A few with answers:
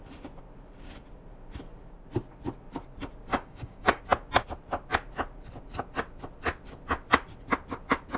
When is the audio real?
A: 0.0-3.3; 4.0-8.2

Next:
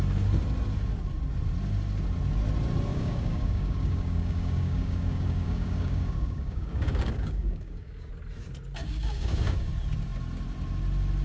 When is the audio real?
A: 0.0-2.9; 8.1-8.8; 9.7-11.2

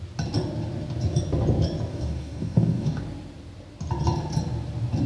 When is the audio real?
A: 0.0-1.9; 3.0-5.1